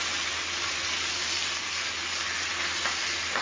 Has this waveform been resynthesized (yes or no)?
no